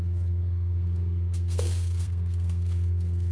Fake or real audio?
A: fake